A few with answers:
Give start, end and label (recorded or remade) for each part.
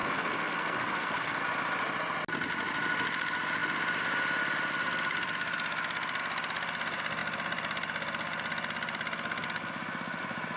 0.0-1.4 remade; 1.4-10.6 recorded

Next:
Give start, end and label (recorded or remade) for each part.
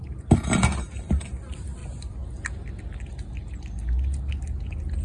0.0-5.0 recorded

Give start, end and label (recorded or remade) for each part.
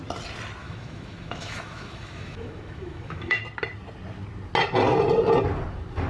0.0-0.6 recorded; 0.6-3.4 remade; 3.4-6.1 recorded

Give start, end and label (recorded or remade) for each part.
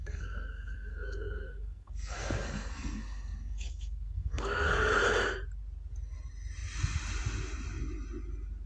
0.0-4.9 remade; 4.9-8.7 recorded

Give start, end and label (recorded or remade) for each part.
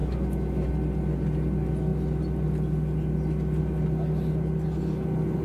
0.0-0.7 remade; 0.7-5.4 recorded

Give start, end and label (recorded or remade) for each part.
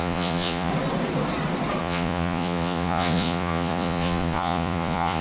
0.0-0.7 remade; 0.7-1.8 recorded; 1.8-5.2 remade